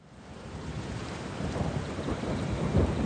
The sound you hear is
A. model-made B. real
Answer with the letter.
A